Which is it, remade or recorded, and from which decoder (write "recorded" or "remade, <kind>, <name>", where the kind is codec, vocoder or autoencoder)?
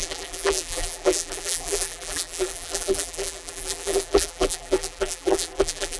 remade, vocoder, BigVGAN v2